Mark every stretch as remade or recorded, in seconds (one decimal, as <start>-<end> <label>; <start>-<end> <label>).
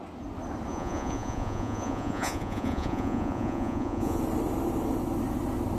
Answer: 0.0-0.7 recorded; 0.7-4.2 remade; 4.2-5.8 recorded